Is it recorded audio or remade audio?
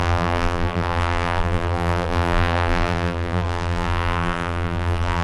remade